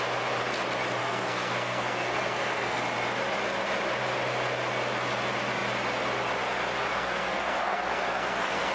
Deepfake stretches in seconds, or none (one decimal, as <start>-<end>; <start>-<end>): 1.0-2.8; 6.9-8.7